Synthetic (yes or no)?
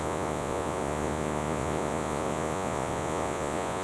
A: yes